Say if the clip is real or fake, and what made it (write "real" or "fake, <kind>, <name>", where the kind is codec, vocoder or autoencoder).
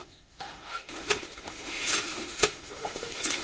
fake, autoencoder, DAC-VAE